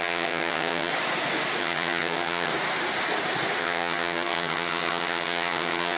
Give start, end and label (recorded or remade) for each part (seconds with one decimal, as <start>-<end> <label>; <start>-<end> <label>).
0.0-0.9 remade; 0.9-1.6 recorded; 1.6-2.5 remade; 2.5-3.6 recorded; 3.6-6.0 remade